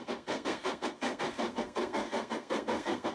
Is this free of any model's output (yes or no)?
no